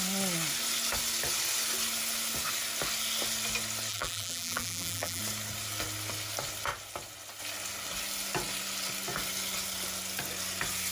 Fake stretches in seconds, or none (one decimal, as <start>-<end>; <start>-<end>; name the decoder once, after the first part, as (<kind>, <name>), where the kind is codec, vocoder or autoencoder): 3.9-5.2 (vocoder, BigVGAN v2)